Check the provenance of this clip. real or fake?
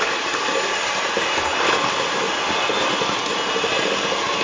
real